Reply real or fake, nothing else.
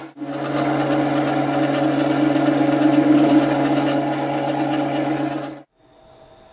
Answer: real